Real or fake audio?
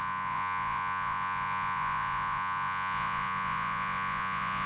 fake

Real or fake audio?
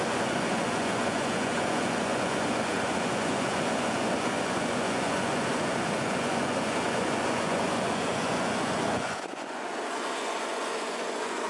fake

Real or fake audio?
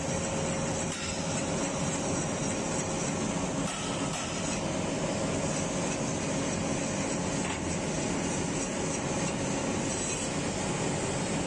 real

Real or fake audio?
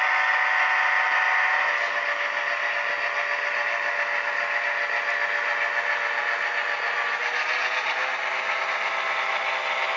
real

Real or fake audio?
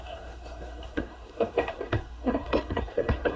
fake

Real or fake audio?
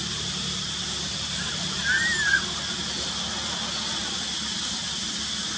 real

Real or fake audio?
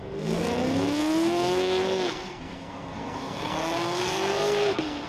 fake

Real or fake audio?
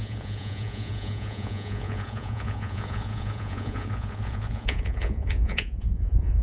fake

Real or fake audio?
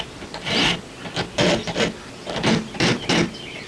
real